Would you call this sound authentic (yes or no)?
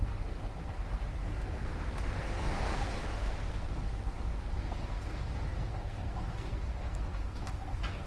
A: no